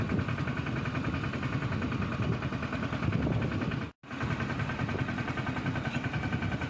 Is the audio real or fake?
real